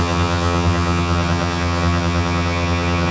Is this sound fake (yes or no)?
yes